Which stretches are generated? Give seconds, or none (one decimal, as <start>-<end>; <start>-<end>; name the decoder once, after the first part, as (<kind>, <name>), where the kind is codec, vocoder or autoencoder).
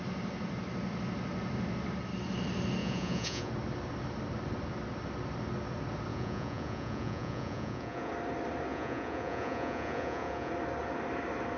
2.8-3.5 (vocoder, Vocos); 6.1-8.1; 8.7-10.5